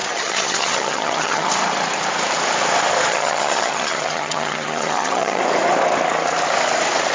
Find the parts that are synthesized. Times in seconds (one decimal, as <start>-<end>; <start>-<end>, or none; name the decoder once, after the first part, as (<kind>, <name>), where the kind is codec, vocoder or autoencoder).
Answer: 0.0-1.5 (vocoder, HiFi-GAN); 3.1-5.4